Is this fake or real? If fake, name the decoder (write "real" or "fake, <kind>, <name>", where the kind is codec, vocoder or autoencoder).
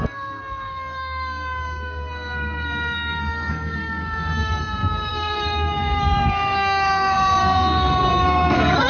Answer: fake, codec, SNAC